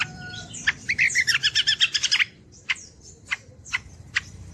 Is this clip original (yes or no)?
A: no